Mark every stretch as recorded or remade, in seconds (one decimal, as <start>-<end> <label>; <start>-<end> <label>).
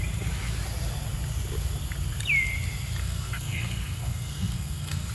0.0-3.0 recorded; 3.0-5.1 remade